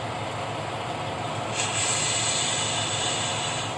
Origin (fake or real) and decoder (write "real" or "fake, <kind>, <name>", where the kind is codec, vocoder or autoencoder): real